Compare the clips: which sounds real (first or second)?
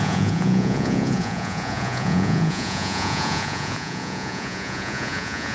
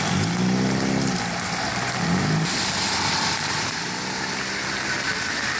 second